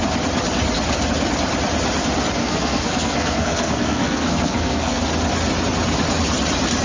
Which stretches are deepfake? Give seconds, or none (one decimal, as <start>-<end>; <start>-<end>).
2.4-5.0